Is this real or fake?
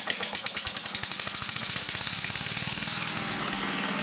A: fake